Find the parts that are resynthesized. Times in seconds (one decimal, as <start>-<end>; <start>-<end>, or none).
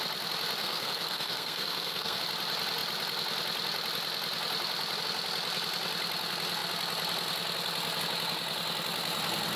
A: 0.6-2.2